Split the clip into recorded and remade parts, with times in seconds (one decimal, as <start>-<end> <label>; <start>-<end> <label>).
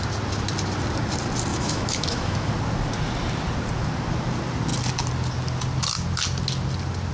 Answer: 0.0-1.5 recorded; 1.5-2.5 remade; 2.5-7.1 recorded